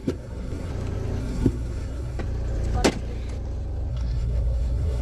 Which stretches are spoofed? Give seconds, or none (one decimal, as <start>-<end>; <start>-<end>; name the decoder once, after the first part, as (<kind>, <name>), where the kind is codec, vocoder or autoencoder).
0.0-0.7 (codec, SNAC); 1.2-2.2; 3.9-5.0